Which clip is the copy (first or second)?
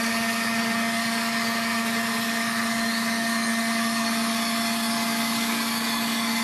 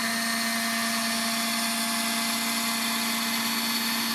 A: first